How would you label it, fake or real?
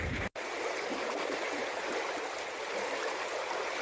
real